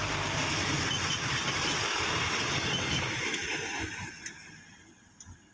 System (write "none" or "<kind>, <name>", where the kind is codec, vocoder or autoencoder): none